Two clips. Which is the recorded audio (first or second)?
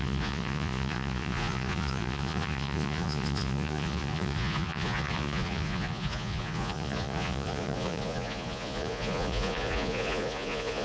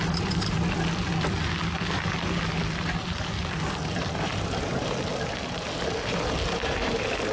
second